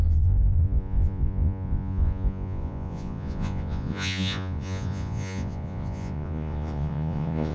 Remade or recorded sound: remade